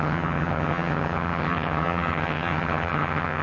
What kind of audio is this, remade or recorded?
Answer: remade